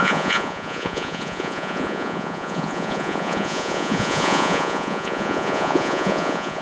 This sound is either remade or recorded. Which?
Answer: remade